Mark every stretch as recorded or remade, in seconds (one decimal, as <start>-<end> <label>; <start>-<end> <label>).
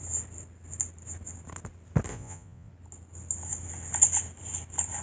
0.0-2.1 recorded; 2.1-2.7 remade; 2.7-5.0 recorded